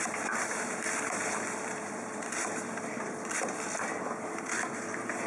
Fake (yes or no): yes